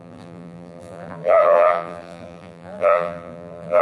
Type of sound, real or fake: fake